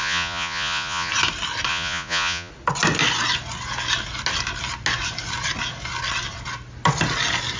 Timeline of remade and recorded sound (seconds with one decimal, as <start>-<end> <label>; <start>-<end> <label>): 0.0-1.1 remade; 1.1-1.7 recorded; 1.7-2.5 remade; 2.5-7.6 recorded